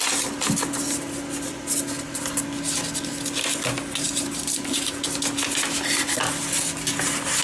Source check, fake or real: real